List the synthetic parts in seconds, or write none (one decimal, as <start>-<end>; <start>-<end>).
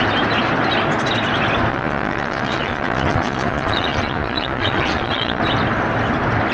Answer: 1.7-5.4